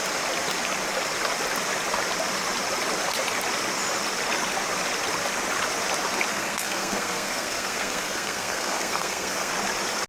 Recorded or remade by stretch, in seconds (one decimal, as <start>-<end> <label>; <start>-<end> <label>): 0.0-6.3 recorded; 6.3-9.5 remade; 9.5-10.1 recorded